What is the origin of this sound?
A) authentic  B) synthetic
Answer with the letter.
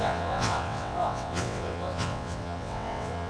B